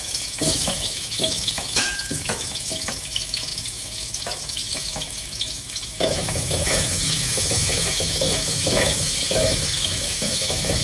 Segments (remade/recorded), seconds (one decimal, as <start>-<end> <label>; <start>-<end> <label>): 0.0-10.8 remade